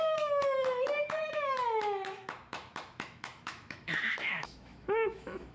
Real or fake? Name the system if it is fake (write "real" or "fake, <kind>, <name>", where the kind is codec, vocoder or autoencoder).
fake, autoencoder, DAC-VAE